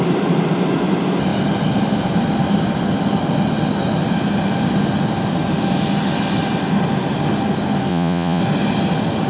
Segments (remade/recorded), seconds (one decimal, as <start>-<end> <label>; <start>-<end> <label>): 0.0-7.9 recorded; 7.9-8.4 remade; 8.4-9.3 recorded